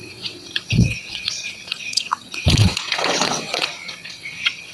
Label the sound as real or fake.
fake